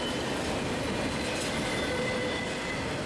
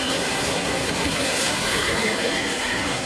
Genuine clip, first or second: first